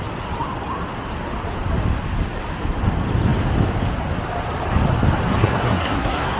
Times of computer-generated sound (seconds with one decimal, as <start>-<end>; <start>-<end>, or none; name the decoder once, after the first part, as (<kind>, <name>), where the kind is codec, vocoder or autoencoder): 5.4-6.4 (codec, SNAC)